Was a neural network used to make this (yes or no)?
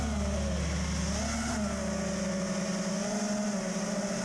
no